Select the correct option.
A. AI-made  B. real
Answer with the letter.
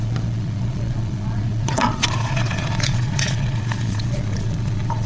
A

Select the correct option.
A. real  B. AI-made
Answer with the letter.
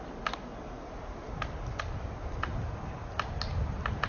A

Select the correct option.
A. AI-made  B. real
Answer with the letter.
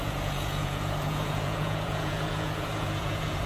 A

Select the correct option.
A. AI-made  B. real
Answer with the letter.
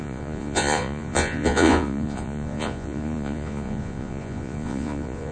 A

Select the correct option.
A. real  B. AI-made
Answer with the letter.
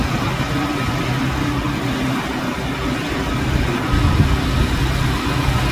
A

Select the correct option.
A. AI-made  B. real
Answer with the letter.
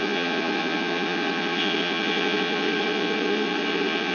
A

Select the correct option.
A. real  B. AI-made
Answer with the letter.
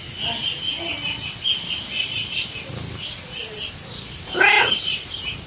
A